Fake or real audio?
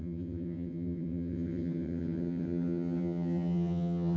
fake